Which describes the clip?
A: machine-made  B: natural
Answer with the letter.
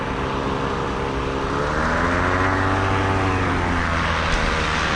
B